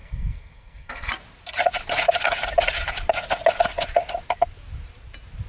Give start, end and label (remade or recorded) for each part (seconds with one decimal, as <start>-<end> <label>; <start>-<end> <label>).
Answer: 0.0-1.1 remade; 1.1-5.5 recorded